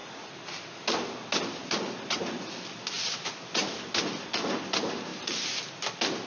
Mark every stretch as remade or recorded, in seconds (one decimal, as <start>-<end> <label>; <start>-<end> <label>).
0.0-6.3 recorded